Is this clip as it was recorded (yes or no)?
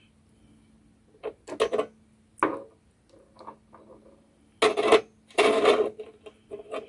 yes